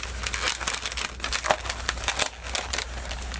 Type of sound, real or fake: real